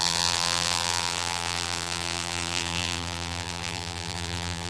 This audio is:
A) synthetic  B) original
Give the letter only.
A